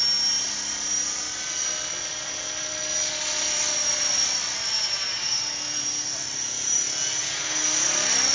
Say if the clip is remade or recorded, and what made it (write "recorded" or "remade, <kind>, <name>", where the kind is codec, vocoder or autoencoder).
recorded